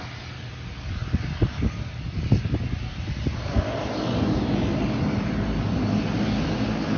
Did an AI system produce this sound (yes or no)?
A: no